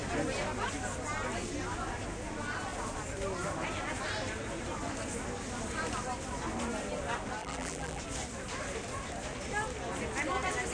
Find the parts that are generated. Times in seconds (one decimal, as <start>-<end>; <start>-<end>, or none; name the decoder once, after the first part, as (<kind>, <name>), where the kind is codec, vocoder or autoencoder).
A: 7.4-8.0 (vocoder, BigVGAN v2)